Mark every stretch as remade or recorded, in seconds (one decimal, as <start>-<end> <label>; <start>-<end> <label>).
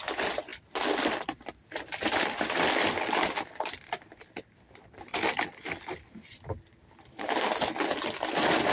0.0-0.5 recorded; 0.5-4.6 remade; 4.6-8.7 recorded